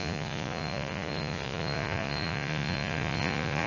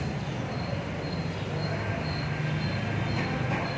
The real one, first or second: second